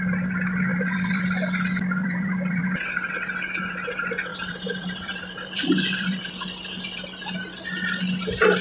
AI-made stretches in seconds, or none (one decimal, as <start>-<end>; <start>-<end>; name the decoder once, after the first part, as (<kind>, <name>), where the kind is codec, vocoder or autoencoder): 0.7-1.2 (vocoder, BigVGAN v2); 2.0-3.1; 4.3-6.2